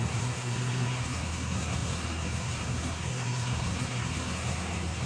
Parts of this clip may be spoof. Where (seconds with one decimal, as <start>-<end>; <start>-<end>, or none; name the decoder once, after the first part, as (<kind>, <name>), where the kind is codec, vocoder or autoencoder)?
0.0-5.1 (codec, SNAC)